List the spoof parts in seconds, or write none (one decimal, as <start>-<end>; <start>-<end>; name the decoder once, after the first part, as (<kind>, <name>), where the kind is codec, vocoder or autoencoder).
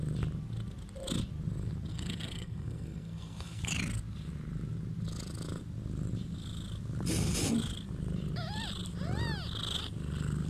1.9-3.6 (codec, SNAC)